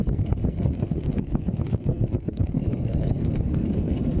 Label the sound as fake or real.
fake